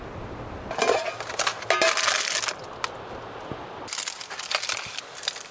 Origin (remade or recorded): recorded